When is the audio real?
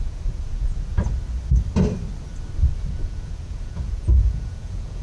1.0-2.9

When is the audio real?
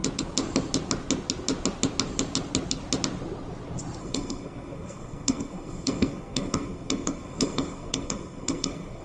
0.0-4.0